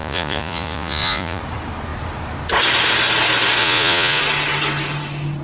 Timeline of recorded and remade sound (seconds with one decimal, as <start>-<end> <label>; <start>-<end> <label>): 0.0-1.4 remade; 1.4-3.6 recorded; 3.6-4.2 remade; 4.2-5.4 recorded